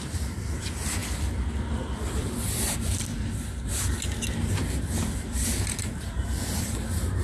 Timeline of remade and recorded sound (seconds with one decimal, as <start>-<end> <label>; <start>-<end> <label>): 0.0-1.0 remade; 1.0-2.2 recorded; 2.2-3.1 remade; 3.1-5.8 recorded; 5.8-7.2 remade